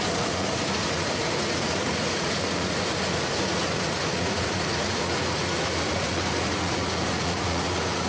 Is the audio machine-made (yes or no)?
yes